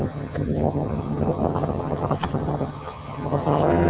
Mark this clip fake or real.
fake